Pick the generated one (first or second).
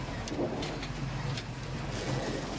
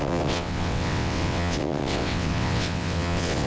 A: second